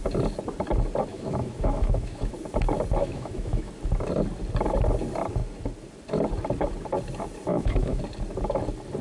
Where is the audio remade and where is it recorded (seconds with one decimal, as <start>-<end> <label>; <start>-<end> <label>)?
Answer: 0.0-1.1 recorded; 1.1-2.3 remade; 2.3-3.0 recorded; 3.0-3.7 remade; 3.7-7.5 recorded; 7.5-8.0 remade; 8.0-9.0 recorded